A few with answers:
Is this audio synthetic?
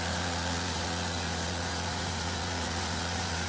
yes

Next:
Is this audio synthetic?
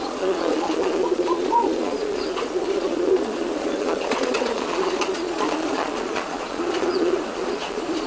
yes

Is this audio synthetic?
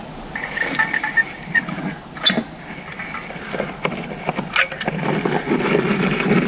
no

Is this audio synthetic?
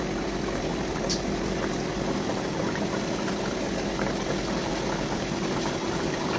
no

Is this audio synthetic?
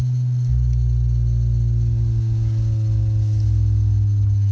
no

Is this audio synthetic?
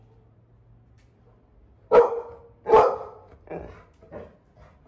no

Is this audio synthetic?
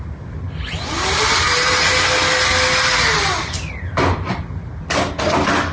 no